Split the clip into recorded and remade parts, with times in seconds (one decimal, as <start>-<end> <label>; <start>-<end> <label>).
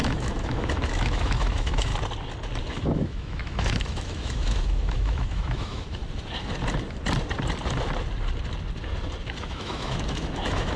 0.0-1.9 remade; 1.9-2.7 recorded; 2.7-6.0 remade; 6.0-9.4 recorded; 9.4-10.8 remade